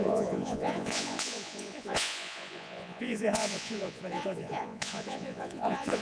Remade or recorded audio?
remade